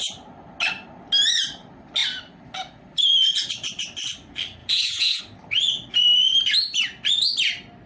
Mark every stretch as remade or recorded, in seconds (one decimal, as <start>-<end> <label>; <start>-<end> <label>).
0.0-4.6 recorded; 4.6-5.2 remade; 5.2-7.9 recorded